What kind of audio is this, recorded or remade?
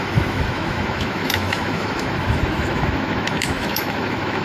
remade